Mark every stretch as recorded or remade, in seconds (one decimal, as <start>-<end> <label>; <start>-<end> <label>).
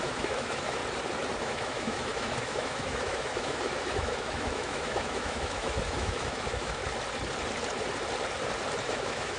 0.0-0.8 remade; 0.8-1.4 recorded; 1.4-6.8 remade; 6.8-8.8 recorded; 8.8-9.4 remade